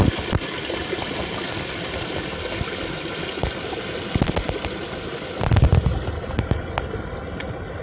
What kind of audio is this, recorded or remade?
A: recorded